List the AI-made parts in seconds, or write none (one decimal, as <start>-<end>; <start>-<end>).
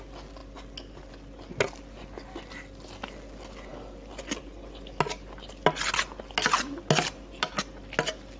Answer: none